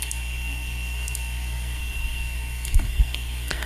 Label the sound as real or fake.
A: fake